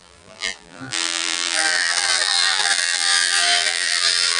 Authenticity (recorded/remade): remade